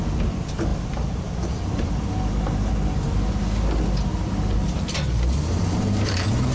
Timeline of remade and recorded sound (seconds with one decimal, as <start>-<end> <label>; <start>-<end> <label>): 0.0-0.7 recorded; 0.7-2.2 remade; 2.2-4.1 recorded; 4.1-4.9 remade; 4.9-6.5 recorded